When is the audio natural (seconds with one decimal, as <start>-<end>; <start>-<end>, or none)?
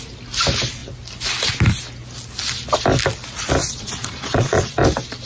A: 0.0-3.6; 4.8-5.3